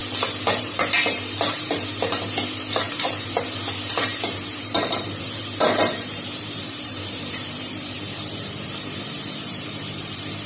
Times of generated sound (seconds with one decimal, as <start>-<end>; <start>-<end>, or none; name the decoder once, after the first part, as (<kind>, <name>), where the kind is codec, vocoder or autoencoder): 0.6-10.5 (vocoder, BigVGAN v2)